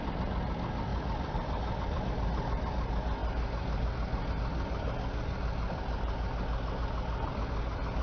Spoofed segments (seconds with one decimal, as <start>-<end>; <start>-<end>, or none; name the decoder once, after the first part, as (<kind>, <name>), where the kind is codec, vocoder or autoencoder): 0.9-2.1 (vocoder, BigVGAN v2)